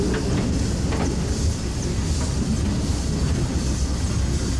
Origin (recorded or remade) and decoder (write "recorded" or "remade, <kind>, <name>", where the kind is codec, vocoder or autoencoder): recorded